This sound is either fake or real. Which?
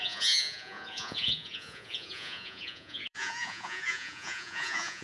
fake